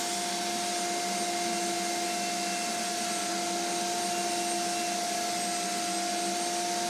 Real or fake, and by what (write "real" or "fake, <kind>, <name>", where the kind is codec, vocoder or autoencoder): real